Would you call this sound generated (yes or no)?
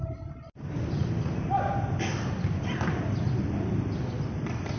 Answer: no